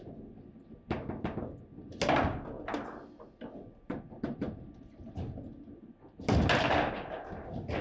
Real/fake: real